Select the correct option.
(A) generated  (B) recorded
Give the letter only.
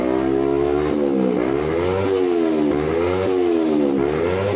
B